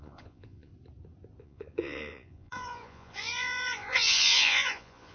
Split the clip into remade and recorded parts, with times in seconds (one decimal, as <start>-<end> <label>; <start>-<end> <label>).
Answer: 0.0-0.7 remade; 0.7-1.4 recorded; 1.4-5.1 remade